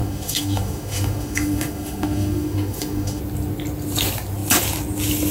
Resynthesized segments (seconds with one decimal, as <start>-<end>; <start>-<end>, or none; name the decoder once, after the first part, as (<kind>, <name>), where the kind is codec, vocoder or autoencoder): 0.0-3.2 (autoencoder, DAC-VAE)